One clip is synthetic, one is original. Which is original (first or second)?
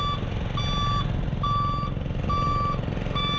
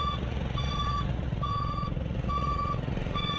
first